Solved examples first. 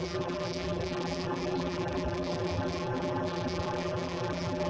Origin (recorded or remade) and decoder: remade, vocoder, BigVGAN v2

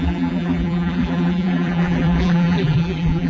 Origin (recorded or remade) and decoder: remade, vocoder, BigVGAN v2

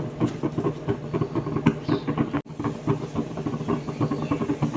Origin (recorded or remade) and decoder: recorded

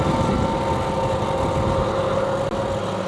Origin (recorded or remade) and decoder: recorded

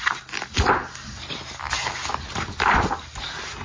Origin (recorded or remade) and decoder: recorded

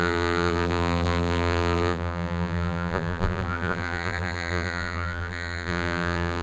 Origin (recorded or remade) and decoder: remade, vocoder, BigVGAN v2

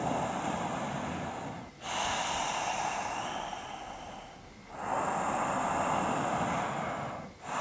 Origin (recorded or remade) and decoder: recorded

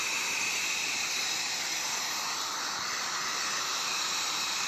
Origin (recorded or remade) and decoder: remade, vocoder, BigVGAN v2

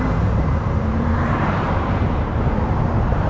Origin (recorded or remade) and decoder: remade, vocoder, BigVGAN v2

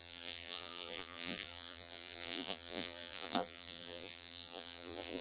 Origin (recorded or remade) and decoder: remade, vocoder, BigVGAN v2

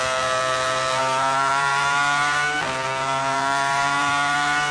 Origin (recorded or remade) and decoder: remade, vocoder, BigVGAN v2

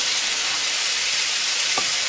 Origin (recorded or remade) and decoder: recorded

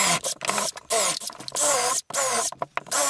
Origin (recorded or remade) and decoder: recorded